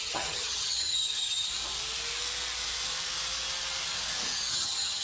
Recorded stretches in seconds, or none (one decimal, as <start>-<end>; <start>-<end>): 1.5-4.5